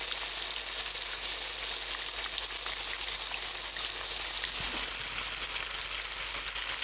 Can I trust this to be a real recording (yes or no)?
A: yes